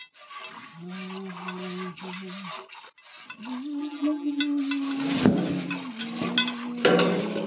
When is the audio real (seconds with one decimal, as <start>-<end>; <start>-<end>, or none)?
0.0-3.8; 4.4-7.5